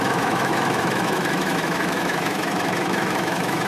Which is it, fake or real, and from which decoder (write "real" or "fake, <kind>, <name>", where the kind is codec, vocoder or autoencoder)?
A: fake, autoencoder, DAC-VAE